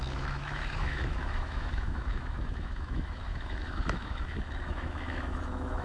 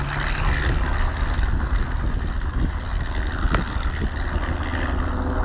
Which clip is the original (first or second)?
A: second